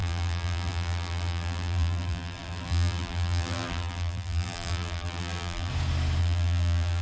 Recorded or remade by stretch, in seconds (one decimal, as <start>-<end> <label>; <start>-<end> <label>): 0.0-5.7 remade; 5.7-6.2 recorded; 6.2-7.0 remade